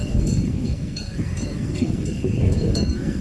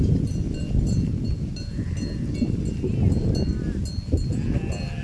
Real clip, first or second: second